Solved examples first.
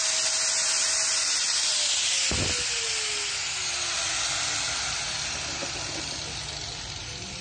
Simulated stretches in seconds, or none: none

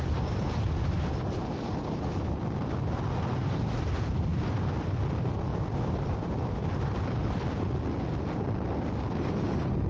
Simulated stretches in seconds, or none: 5.5-6.9

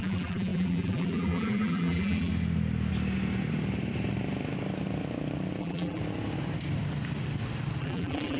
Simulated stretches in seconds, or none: 0.0-2.3; 5.6-6.0; 7.8-8.4

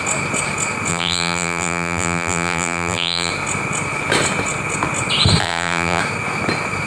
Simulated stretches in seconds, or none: 0.9-3.3; 5.4-6.0

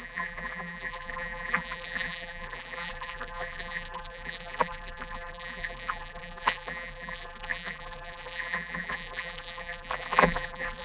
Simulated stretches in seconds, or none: 0.0-10.8

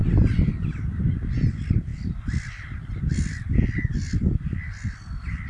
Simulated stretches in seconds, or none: 1.9-3.3

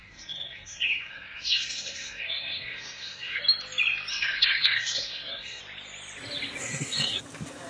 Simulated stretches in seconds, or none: 0.0-3.4; 4.1-5.6; 6.6-7.2

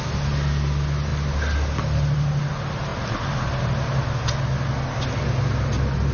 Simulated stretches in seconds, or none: none